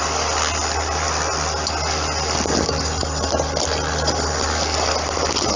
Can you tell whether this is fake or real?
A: real